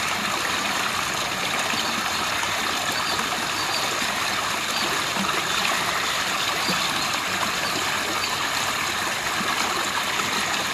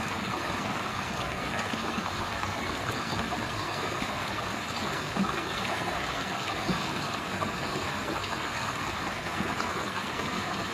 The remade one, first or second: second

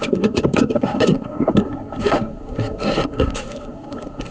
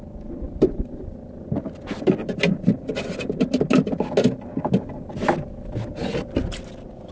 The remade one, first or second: first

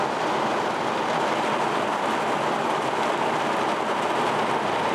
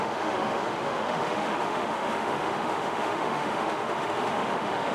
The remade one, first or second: second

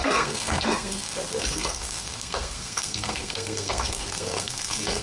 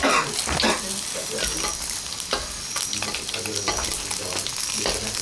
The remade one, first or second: first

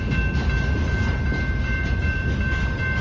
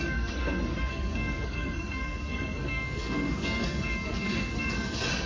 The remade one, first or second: second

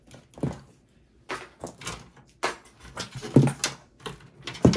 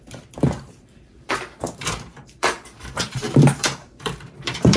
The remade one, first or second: second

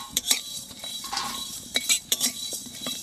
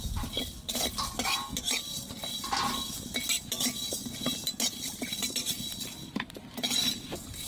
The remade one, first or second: first